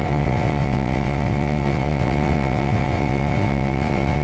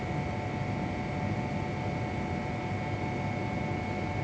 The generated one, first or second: first